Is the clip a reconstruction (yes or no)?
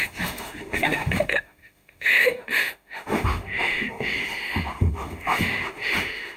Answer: yes